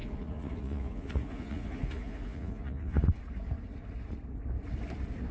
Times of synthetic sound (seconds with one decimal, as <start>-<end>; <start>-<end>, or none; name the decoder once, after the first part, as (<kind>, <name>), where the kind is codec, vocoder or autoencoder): 0.0-3.2 (vocoder, Vocos)